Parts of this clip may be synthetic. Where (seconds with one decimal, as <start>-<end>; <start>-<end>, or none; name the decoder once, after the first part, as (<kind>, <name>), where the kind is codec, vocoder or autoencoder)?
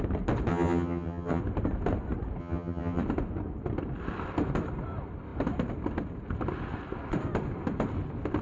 0.5-1.4 (vocoder, HiFi-GAN); 2.4-3.0